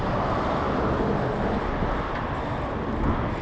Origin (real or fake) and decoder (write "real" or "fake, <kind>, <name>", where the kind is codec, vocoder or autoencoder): real